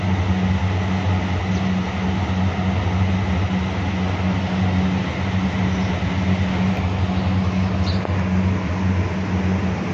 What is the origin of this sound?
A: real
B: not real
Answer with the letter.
A